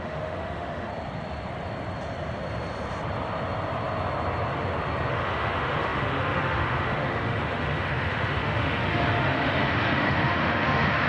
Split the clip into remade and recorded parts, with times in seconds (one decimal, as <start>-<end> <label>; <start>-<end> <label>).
0.0-0.9 remade; 0.9-5.1 recorded; 5.1-11.1 remade